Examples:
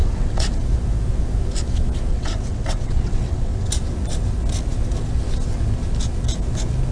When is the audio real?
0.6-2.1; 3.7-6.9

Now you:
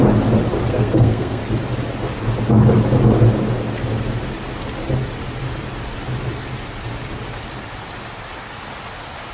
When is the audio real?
0.0-0.7; 1.4-9.3

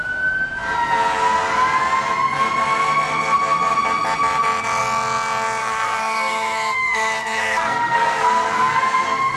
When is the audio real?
0.0-5.6